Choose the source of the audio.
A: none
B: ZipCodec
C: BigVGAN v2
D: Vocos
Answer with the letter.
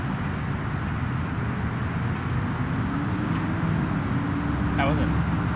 A